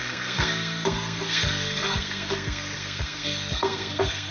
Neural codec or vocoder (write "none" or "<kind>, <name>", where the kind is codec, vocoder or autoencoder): codec, SNAC